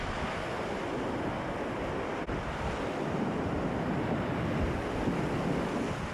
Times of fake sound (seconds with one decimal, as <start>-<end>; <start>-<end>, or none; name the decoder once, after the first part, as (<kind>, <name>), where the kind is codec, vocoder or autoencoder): none